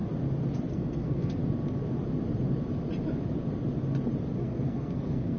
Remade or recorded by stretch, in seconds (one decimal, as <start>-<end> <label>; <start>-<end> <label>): 0.0-0.7 recorded; 0.7-1.4 remade; 1.4-4.4 recorded; 4.4-5.4 remade

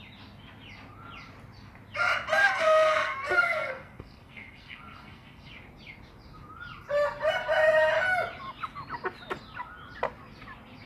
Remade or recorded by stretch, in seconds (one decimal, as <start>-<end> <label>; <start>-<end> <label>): 0.0-2.4 recorded; 2.4-5.5 remade; 5.5-10.9 recorded

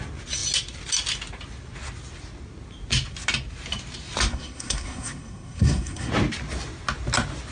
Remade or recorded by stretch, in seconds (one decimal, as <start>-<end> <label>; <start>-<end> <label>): 0.0-4.3 recorded; 4.3-6.1 remade; 6.1-7.5 recorded

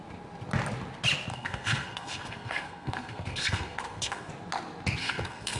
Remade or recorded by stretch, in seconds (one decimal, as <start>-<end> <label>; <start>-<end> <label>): 0.0-1.3 recorded; 1.3-4.3 remade; 4.3-5.0 recorded; 5.0-5.6 remade